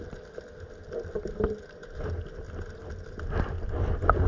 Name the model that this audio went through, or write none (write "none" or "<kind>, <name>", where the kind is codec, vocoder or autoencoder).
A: none